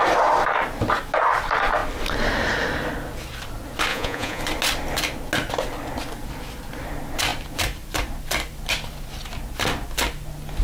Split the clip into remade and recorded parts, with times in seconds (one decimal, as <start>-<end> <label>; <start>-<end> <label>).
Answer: 0.0-3.9 recorded; 3.9-4.4 remade; 4.4-10.6 recorded